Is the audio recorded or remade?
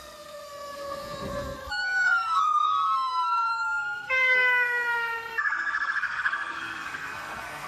remade